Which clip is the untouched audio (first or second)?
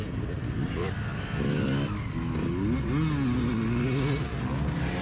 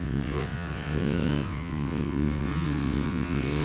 first